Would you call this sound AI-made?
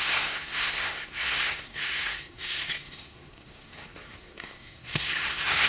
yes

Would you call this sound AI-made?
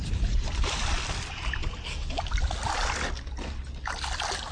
no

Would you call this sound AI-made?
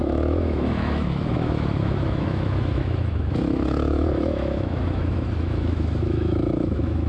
yes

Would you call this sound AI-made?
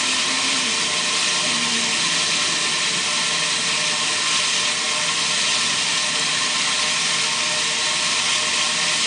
no